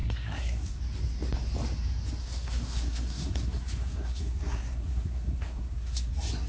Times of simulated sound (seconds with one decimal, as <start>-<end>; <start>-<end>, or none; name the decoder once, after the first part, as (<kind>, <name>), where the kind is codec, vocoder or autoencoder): 0.0-0.8 (codec, SNAC); 2.2-6.1